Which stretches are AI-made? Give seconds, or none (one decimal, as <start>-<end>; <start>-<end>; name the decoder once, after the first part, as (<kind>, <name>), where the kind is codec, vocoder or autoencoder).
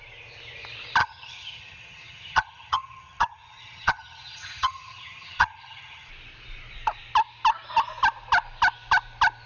1.0-6.1 (vocoder, HiFi-GAN)